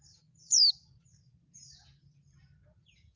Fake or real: real